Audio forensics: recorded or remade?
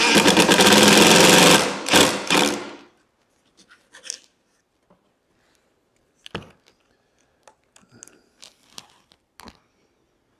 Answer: recorded